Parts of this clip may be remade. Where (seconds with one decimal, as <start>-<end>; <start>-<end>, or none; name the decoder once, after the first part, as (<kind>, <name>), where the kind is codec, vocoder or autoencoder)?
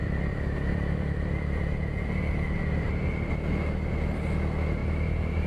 0.0-3.3 (vocoder, BigVGAN v2)